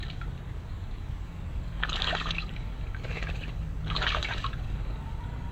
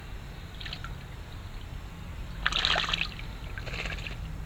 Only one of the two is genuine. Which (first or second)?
second